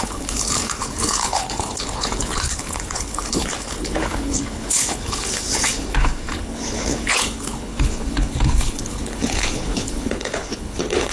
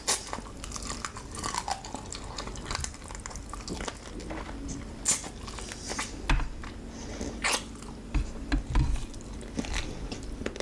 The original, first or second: second